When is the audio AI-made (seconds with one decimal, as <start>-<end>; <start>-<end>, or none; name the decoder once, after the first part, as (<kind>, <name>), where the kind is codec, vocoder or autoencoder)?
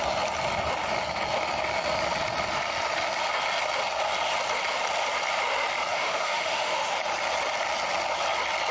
5.9-7.0 (autoencoder, DAC-VAE)